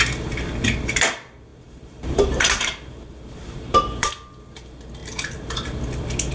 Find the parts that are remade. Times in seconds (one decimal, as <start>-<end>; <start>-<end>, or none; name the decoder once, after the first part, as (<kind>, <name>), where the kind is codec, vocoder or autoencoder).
1.5-4.1 (vocoder, BigVGAN v2)